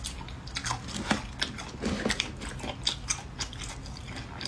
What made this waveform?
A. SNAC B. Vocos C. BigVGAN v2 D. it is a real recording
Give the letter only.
D